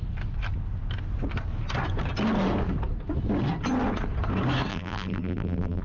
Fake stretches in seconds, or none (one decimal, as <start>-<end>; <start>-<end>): 4.7-5.8